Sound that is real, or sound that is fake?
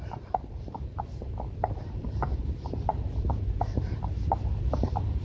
fake